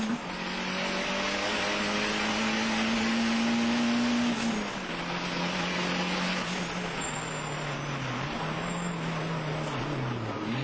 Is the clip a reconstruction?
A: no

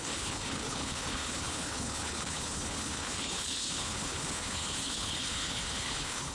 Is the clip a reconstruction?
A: yes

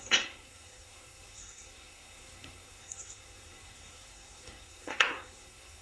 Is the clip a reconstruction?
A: yes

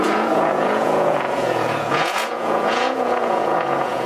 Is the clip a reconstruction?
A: yes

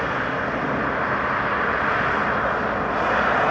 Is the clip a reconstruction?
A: no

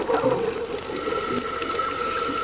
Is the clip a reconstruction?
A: no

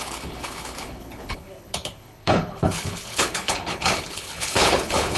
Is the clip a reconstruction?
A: yes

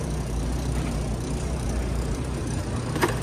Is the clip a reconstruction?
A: yes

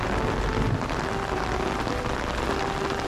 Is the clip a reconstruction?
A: no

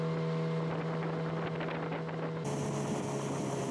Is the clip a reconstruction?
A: no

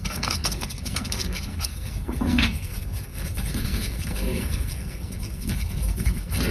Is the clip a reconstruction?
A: yes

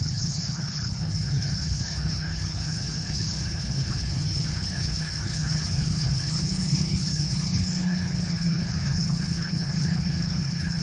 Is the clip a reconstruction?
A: yes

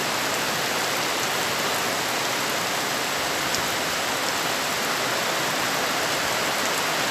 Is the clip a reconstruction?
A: no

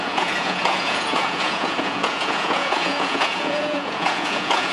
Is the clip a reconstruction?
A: yes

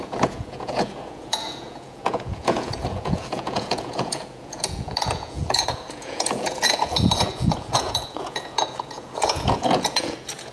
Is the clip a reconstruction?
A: yes